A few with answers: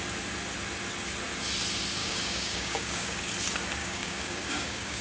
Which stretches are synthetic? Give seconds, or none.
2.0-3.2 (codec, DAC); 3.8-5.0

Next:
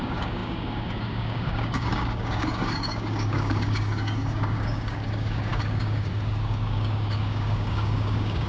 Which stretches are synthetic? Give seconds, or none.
0.0-8.5 (codec, DAC)